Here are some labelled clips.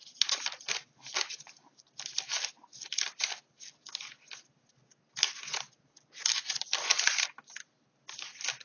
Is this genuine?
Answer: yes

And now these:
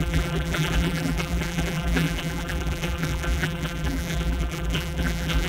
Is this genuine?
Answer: no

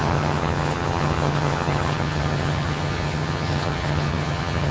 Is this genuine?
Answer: no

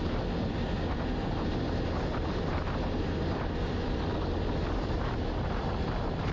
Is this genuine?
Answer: no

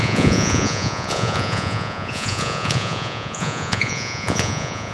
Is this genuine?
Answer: no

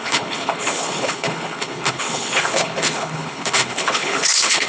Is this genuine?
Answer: no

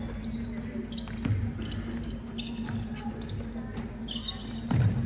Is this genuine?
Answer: yes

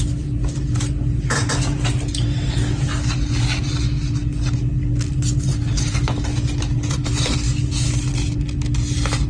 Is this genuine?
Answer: yes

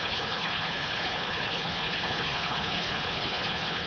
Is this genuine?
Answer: no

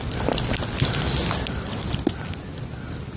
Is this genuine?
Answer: yes